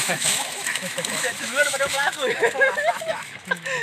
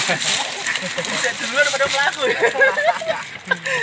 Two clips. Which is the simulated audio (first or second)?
first